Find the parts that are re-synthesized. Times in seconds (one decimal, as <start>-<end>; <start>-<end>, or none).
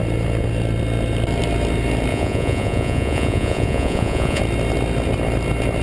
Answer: 2.1-4.4